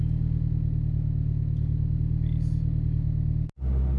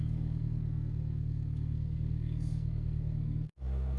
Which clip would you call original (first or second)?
first